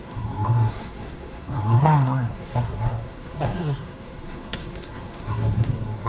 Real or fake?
fake